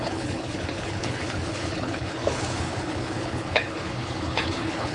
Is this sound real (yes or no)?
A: no